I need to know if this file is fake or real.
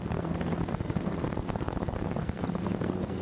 fake